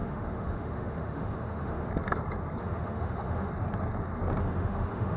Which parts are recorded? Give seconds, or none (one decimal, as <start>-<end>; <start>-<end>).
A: 1.9-2.6; 3.5-4.4